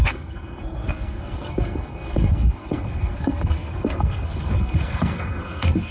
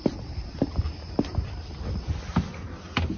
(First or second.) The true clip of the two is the second